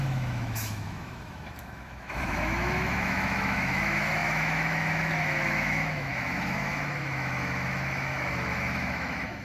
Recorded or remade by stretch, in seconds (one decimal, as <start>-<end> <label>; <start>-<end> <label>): 0.0-9.4 remade